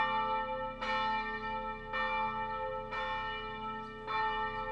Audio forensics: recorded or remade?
recorded